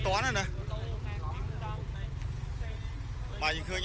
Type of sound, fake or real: real